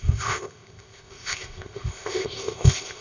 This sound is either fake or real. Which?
fake